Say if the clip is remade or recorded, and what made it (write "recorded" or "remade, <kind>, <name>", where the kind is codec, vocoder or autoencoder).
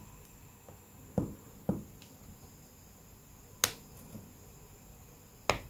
recorded